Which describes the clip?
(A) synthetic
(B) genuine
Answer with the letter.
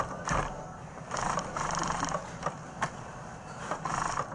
A